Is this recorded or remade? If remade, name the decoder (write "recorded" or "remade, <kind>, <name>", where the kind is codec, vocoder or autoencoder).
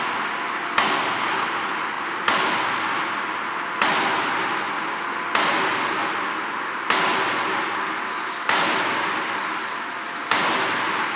recorded